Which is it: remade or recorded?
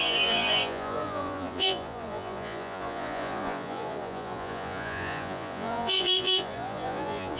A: remade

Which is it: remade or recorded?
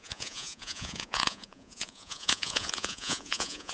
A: remade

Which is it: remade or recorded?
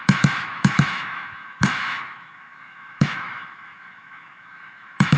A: remade